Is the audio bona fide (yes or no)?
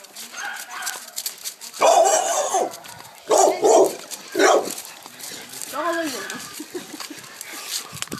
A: yes